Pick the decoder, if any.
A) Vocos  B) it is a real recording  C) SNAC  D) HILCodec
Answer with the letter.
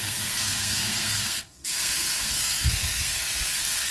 C